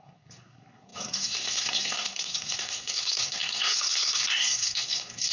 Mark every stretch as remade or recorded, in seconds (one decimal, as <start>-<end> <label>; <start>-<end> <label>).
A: 0.0-5.3 remade